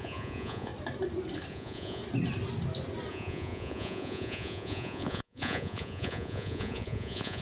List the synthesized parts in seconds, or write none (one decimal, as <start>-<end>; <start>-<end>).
0.0-0.7; 1.5-2.0; 3.1-7.4